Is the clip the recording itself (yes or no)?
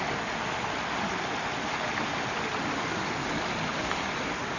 yes